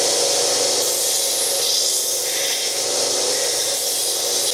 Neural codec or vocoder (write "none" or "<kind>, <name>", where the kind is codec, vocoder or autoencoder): none